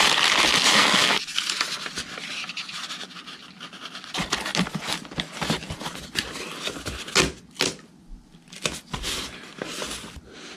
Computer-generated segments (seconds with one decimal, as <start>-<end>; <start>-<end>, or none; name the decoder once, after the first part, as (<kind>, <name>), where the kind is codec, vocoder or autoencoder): 0.7-1.2 (codec, SNAC)